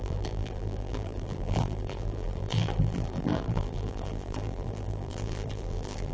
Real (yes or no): no